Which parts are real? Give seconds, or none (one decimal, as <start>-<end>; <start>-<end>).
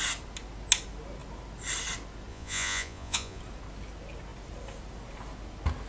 0.0-2.3; 3.4-5.9